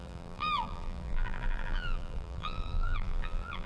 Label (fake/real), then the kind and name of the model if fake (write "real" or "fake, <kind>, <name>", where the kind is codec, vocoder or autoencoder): fake, vocoder, BigVGAN v2